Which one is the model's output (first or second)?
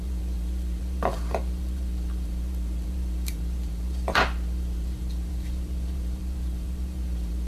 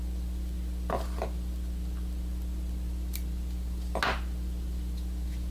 first